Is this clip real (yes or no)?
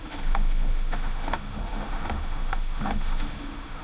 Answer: no